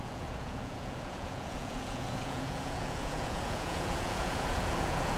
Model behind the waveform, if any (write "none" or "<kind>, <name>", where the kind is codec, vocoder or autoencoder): vocoder, Vocos